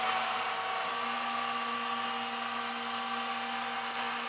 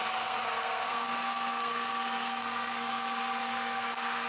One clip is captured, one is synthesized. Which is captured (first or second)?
first